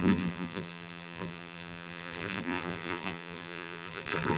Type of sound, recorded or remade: remade